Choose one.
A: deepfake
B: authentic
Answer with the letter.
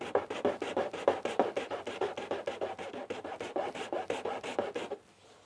B